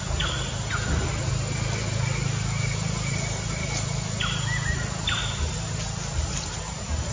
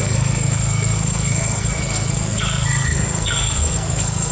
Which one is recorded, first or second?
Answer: first